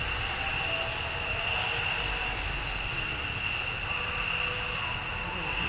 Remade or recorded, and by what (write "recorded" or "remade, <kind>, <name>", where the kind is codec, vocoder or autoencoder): recorded